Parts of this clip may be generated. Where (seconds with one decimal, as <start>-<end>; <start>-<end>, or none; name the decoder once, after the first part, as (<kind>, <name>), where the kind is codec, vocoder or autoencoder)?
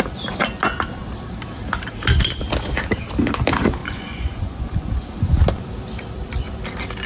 3.8-5.0 (vocoder, Vocos)